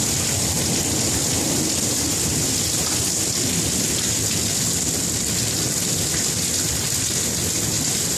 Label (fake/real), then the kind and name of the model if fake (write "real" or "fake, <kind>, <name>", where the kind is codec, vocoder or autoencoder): real